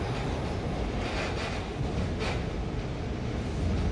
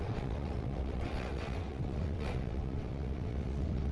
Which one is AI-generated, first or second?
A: second